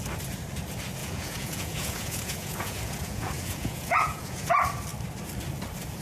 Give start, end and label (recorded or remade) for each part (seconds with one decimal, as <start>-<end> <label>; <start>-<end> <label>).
0.0-1.0 recorded; 1.0-4.5 remade; 4.5-6.0 recorded